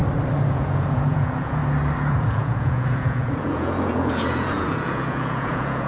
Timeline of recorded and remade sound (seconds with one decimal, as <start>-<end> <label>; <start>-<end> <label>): 0.0-0.5 recorded; 0.5-1.6 remade; 1.6-2.1 recorded; 2.1-5.9 remade